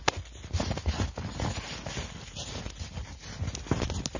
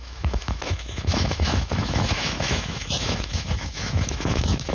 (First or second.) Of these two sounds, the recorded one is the first